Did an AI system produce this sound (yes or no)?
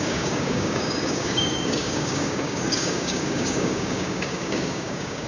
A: yes